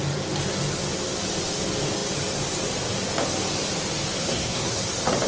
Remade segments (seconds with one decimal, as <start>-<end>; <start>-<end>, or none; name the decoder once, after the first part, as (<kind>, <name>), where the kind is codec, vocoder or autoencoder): 4.2-4.8 (codec, SNAC)